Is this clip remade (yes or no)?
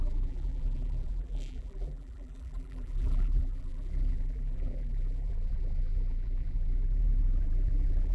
yes